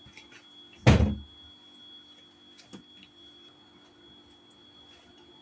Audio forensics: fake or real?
real